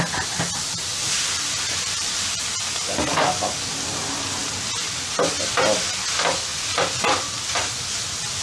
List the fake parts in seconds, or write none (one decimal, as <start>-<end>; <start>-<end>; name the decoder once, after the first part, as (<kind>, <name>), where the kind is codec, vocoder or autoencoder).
0.9-2.5 (vocoder, BigVGAN v2); 6.5-7.9